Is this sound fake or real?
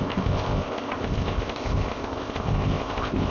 fake